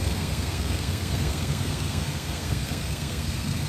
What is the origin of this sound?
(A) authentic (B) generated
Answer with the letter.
B